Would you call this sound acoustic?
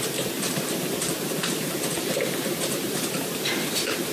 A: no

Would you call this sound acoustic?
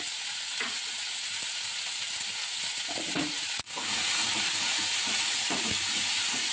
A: no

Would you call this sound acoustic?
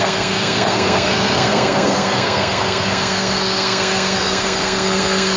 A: no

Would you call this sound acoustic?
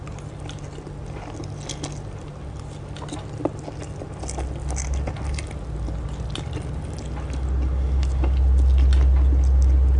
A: yes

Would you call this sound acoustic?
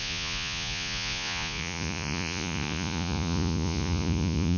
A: no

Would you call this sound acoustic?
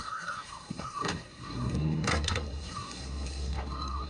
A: no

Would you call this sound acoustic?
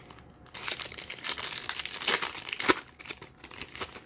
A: yes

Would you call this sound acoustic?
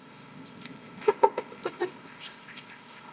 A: no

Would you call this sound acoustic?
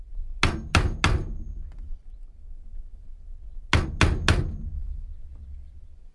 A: yes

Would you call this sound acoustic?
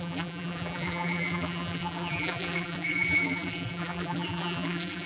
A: no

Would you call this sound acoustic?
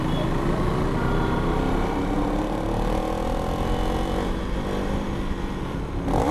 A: yes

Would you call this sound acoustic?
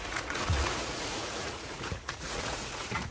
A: no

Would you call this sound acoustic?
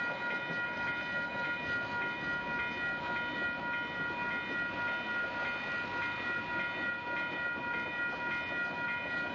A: yes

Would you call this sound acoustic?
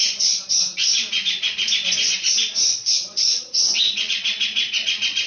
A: no